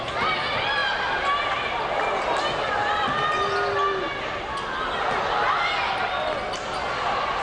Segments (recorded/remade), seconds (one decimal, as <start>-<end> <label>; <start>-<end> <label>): 0.0-7.4 recorded